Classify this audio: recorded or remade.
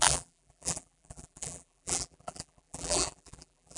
remade